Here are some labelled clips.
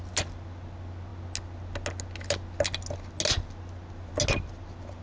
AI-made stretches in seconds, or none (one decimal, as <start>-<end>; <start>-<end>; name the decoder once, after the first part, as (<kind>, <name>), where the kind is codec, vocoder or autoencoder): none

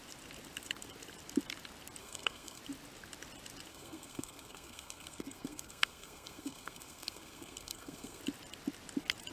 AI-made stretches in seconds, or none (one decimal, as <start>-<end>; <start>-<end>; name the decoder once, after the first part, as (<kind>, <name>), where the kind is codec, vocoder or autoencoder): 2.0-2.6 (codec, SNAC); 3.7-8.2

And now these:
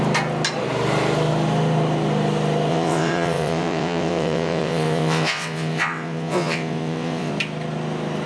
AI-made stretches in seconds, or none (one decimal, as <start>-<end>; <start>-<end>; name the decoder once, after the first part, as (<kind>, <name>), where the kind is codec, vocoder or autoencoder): 2.7-7.3 (vocoder, WaveNeXt)